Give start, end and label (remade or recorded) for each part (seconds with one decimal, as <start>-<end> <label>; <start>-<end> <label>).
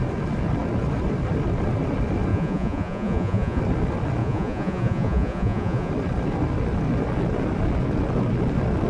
0.0-2.3 recorded; 2.3-3.6 remade; 3.6-4.2 recorded; 4.2-5.9 remade; 5.9-8.9 recorded